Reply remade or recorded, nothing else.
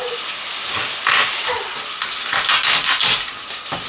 recorded